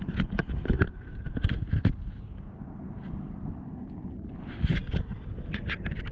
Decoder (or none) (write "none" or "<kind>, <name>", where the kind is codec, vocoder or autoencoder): none